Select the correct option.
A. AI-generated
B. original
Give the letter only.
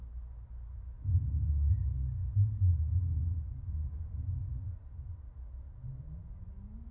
B